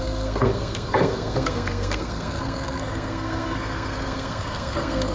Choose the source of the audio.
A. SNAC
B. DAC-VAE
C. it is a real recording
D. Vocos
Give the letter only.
A